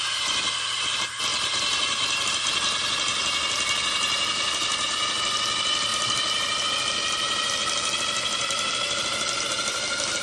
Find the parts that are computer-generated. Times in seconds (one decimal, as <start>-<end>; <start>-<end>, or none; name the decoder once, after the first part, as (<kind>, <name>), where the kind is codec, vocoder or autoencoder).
none